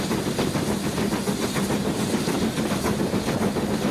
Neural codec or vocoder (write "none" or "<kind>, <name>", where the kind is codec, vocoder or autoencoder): none